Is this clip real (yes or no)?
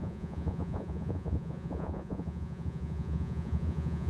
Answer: no